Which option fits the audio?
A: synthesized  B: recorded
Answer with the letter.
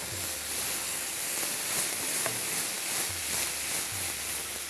B